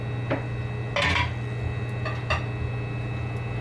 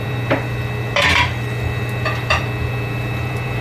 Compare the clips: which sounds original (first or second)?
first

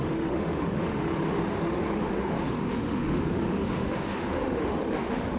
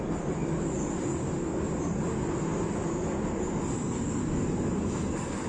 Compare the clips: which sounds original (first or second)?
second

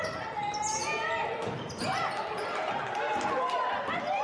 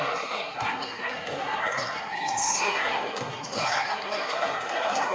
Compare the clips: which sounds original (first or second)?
first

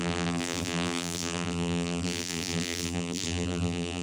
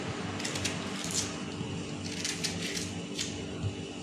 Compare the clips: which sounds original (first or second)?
second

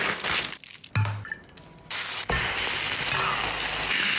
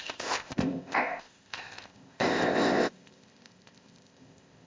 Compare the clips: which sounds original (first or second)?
first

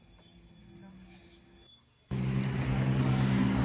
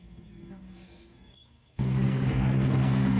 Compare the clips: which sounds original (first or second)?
first